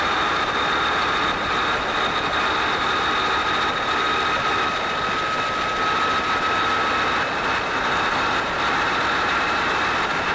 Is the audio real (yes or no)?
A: yes